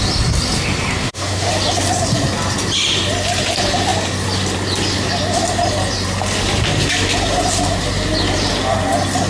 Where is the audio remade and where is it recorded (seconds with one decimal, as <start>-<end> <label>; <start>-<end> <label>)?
0.0-1.0 recorded; 1.0-1.5 remade; 1.5-9.3 recorded